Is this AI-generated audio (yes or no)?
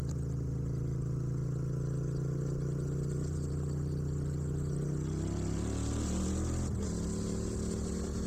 no